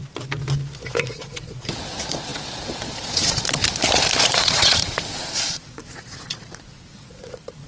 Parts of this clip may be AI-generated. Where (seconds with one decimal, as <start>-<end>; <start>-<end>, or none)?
0.9-3.6; 4.2-7.7